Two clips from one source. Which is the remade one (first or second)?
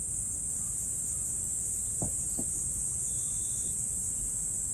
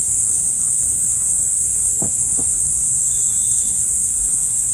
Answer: second